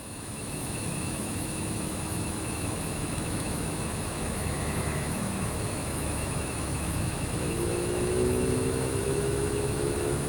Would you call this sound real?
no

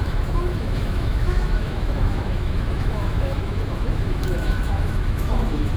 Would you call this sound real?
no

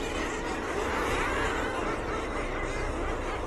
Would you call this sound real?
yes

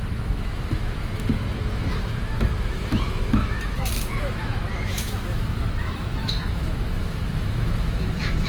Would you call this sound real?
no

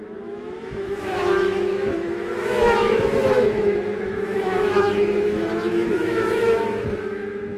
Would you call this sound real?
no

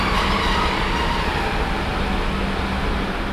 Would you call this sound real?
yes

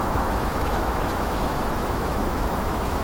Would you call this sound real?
no